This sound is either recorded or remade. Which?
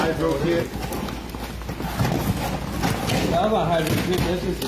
recorded